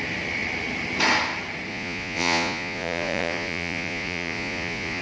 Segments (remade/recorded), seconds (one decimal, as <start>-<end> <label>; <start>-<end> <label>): 0.0-1.7 recorded; 1.7-5.0 remade